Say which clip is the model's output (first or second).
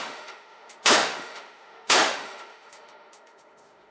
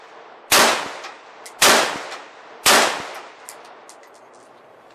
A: first